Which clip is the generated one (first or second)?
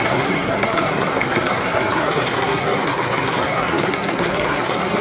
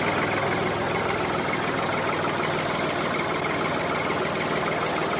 first